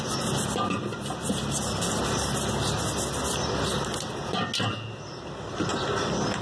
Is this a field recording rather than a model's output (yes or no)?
yes